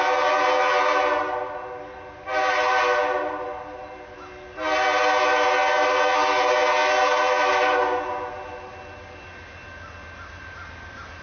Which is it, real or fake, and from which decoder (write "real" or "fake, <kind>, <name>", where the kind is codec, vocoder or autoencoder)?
real